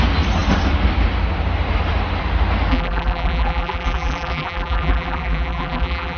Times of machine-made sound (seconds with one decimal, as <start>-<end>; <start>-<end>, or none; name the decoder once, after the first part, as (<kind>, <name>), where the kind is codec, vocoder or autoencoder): 2.7-6.2 (vocoder, BigVGAN v2)